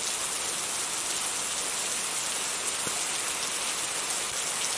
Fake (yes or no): no